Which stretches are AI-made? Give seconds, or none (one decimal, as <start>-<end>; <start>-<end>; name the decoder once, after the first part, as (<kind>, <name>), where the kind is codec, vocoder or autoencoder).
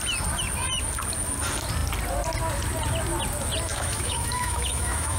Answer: 3.7-5.2 (autoencoder, DAC-VAE)